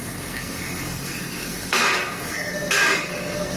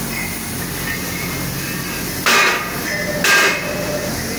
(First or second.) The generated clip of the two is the first